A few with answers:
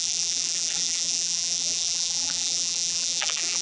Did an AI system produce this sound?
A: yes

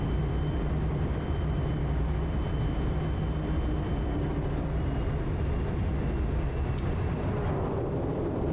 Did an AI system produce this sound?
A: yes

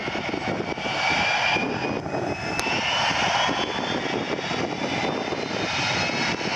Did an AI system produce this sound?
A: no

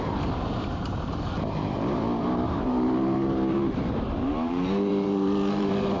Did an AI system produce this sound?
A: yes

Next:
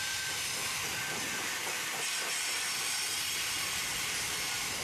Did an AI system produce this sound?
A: yes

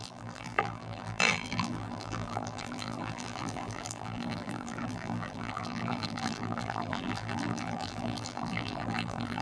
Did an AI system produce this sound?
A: yes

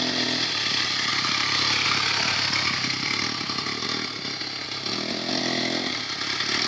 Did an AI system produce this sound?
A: no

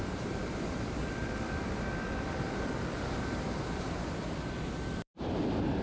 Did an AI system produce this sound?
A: yes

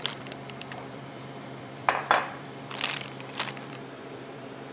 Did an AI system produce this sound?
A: yes